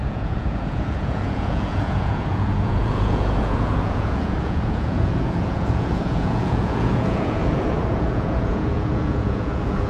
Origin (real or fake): fake